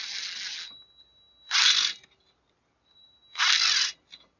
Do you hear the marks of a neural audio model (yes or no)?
no